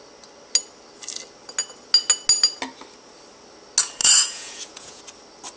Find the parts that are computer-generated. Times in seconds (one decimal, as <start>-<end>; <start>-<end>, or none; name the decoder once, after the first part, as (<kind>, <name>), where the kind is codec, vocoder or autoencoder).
4.0-5.0 (vocoder, Vocos)